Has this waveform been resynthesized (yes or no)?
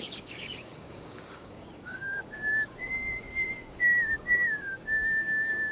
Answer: yes